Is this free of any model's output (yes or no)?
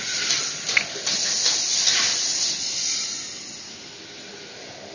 yes